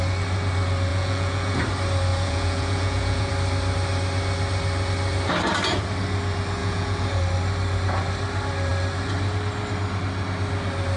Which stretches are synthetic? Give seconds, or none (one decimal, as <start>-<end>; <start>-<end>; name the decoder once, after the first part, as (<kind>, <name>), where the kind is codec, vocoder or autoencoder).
0.9-1.6 (vocoder, Vocos); 2.1-3.3; 6.6-7.2